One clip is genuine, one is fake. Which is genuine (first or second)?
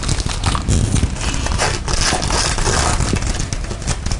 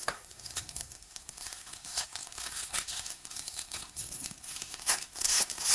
first